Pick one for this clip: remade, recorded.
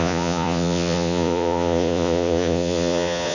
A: remade